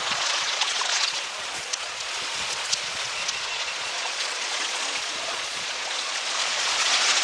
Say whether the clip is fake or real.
fake